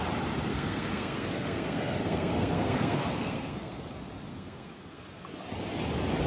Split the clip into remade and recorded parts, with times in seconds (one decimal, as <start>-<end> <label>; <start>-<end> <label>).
0.0-0.5 recorded; 0.5-3.8 remade; 3.8-4.3 recorded; 4.3-5.0 remade; 5.0-6.3 recorded